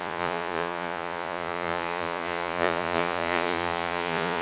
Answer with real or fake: fake